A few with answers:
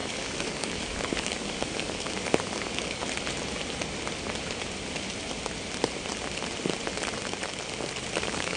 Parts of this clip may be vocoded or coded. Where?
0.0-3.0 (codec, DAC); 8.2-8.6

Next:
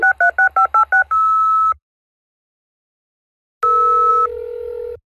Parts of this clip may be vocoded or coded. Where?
1.0-2.5 (codec, DAC); 4.1-5.1

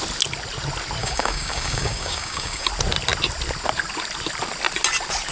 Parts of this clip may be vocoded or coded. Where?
1.0-2.7 (codec, DAC)

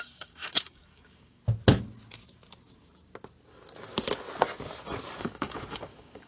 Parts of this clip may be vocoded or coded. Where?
0.0-1.4 (codec, DAC); 5.2-6.3

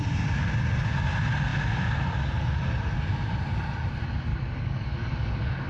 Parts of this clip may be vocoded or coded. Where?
4.3-5.7 (codec, DAC)

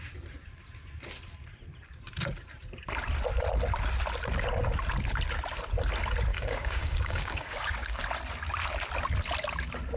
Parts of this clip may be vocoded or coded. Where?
6.3-8.0 (codec, DAC)